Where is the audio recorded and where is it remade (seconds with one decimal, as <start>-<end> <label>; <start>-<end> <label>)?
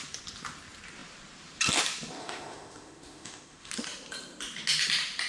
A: 0.0-2.2 recorded; 2.2-3.7 remade; 3.7-5.3 recorded